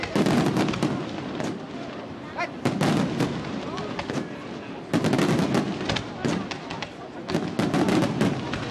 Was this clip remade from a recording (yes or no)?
no